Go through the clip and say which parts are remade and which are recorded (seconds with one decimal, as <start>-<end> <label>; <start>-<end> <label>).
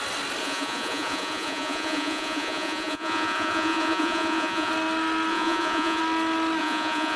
0.0-0.4 recorded; 0.4-4.7 remade; 4.7-5.3 recorded; 5.3-6.0 remade; 6.0-6.6 recorded; 6.6-7.2 remade